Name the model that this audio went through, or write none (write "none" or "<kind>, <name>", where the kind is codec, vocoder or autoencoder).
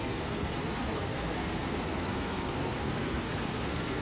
codec, SNAC